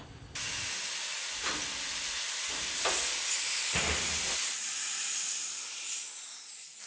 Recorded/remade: recorded